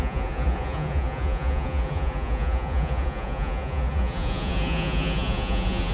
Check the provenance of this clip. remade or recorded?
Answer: remade